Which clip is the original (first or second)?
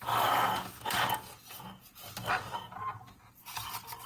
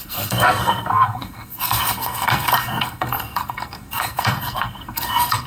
first